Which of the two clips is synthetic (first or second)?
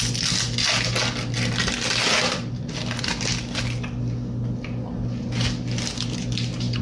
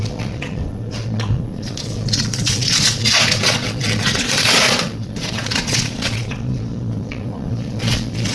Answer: second